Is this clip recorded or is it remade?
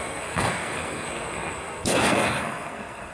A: remade